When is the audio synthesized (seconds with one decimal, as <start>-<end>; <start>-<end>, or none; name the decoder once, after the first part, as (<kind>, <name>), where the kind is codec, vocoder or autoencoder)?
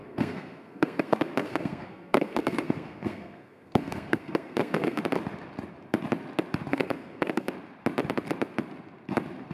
0.0-5.0 (codec, SNAC); 6.7-7.5